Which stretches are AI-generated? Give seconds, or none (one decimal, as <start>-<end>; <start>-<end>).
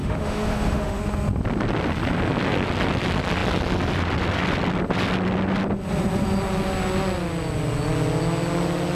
0.0-1.0